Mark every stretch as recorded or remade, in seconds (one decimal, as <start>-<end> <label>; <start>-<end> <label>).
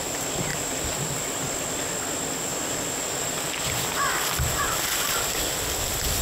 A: 0.0-0.5 recorded; 0.5-1.5 remade; 1.5-2.5 recorded; 2.5-4.6 remade; 4.6-6.2 recorded